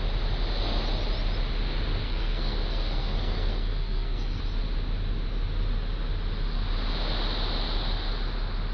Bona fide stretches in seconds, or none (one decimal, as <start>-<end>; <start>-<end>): 0.0-2.0; 4.4-8.7